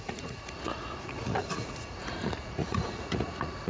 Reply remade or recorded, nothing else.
remade